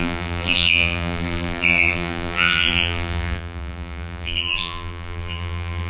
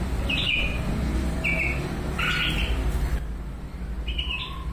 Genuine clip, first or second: second